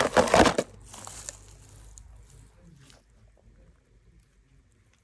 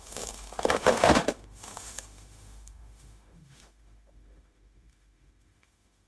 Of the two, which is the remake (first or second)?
second